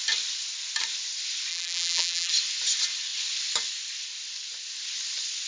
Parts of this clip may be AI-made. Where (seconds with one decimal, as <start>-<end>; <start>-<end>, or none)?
1.5-2.3

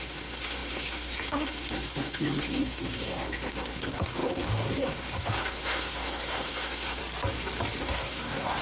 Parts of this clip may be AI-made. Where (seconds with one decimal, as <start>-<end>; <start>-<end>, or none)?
0.0-7.0; 7.8-8.6

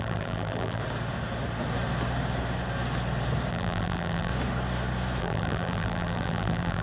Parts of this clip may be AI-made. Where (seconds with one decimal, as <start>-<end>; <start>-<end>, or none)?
0.0-0.8; 3.5-4.3; 5.2-6.8

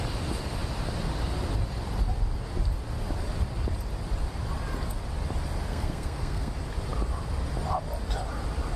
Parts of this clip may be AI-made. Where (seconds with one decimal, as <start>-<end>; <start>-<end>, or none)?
5.7-6.5

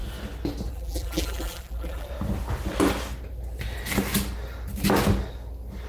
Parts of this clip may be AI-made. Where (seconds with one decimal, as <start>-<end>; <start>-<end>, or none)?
0.7-2.1

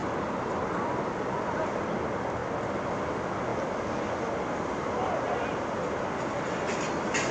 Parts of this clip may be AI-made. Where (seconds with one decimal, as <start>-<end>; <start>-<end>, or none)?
none